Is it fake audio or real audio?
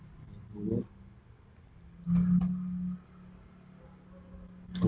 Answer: real